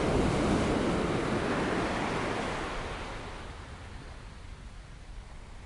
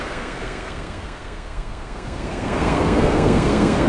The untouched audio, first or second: first